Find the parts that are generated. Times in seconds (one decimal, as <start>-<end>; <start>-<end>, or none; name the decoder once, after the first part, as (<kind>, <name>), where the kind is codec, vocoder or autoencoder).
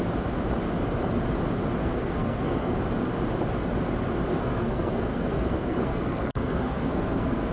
1.8-2.8 (codec, SNAC); 4.3-7.5